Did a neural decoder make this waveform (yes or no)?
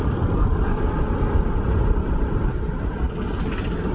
no